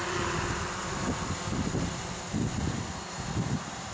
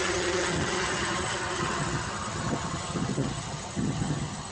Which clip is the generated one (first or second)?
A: second